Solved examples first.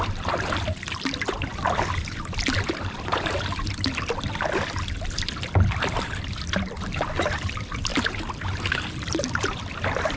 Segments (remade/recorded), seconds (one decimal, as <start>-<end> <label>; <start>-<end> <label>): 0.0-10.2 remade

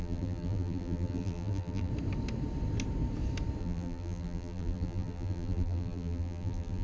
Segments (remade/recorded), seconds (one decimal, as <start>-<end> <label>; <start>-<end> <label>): 0.0-1.9 remade; 1.9-3.6 recorded; 3.6-6.8 remade

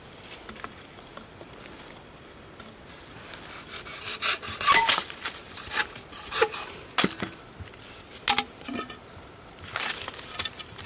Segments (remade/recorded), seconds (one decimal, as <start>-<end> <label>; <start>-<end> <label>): 0.0-3.9 recorded; 3.9-6.6 remade; 6.6-10.9 recorded

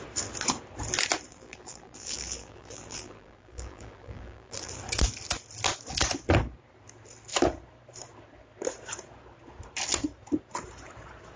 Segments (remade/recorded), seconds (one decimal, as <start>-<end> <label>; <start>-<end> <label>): 0.0-1.3 recorded; 1.3-4.8 remade; 4.8-11.4 recorded

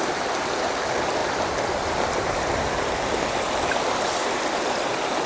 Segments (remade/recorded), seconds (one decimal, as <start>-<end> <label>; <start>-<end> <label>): 0.0-1.2 recorded; 1.2-4.4 remade; 4.4-5.3 recorded

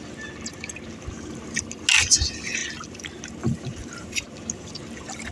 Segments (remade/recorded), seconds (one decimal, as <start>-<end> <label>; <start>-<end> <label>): 0.0-3.7 recorded; 3.7-4.3 remade; 4.3-5.3 recorded